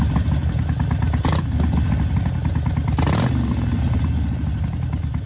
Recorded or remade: recorded